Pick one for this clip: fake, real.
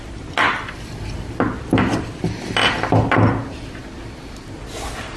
real